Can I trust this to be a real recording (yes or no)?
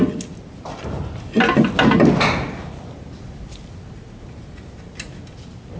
yes